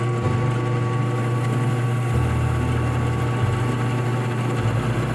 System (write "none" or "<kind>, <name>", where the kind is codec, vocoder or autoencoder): none